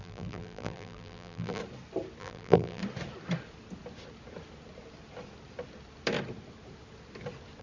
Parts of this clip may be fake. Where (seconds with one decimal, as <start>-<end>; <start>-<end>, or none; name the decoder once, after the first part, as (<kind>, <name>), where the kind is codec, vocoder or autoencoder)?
0.0-1.6 (vocoder, BigVGAN v2); 2.2-2.8